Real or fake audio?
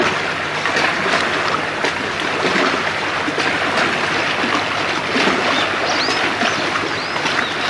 real